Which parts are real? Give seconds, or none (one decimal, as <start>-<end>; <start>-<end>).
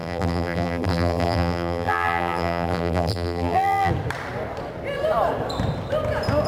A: 3.9-6.5